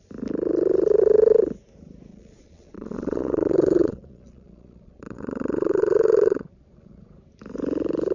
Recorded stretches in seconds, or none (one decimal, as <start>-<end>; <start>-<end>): 0.0-2.1; 7.0-8.1